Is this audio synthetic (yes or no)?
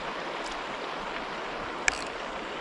no